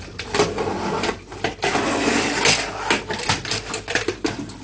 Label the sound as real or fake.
real